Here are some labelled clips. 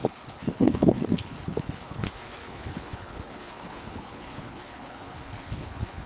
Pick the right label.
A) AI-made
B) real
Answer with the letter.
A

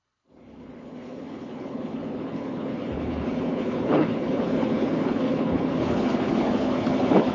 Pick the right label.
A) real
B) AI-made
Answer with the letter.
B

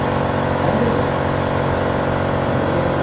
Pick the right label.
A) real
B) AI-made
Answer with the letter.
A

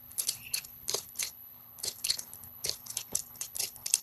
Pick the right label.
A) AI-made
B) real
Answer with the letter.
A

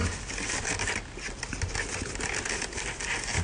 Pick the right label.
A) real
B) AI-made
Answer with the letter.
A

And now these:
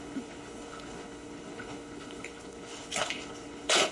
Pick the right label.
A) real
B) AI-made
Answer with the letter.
B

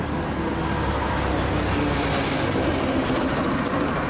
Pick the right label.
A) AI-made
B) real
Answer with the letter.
B